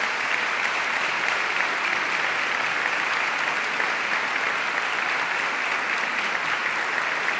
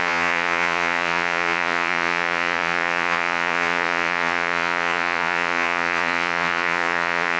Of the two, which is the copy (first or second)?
second